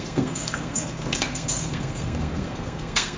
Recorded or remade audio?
remade